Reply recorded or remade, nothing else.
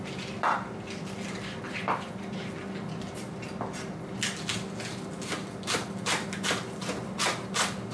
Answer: recorded